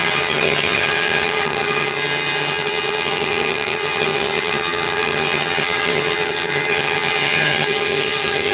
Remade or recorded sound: remade